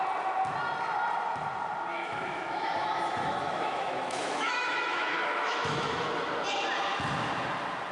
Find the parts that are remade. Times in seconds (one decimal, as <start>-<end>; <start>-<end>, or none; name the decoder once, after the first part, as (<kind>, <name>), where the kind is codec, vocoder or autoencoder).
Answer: 1.9-6.1 (autoencoder, DAC-VAE)